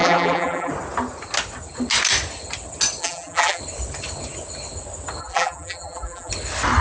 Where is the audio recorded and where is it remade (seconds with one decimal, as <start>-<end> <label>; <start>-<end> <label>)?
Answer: 0.0-0.7 remade; 0.7-3.0 recorded; 3.0-3.6 remade; 3.6-5.2 recorded; 5.2-6.3 remade; 6.3-6.8 recorded